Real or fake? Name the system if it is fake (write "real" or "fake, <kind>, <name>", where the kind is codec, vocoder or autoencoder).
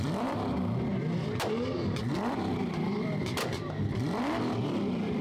fake, vocoder, BigVGAN v2